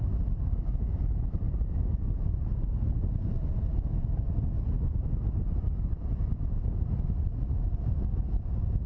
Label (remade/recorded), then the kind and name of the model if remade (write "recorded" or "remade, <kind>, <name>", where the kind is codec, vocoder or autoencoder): recorded